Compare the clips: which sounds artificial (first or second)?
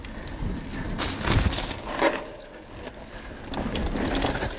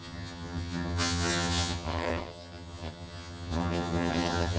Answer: second